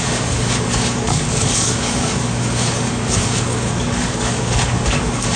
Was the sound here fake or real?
fake